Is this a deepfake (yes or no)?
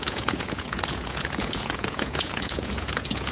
yes